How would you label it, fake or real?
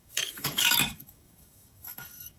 fake